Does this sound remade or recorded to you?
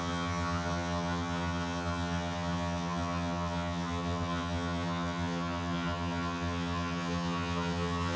remade